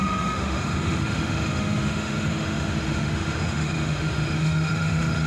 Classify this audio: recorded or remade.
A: remade